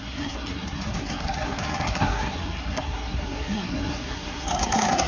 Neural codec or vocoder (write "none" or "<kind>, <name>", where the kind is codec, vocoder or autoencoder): codec, SNAC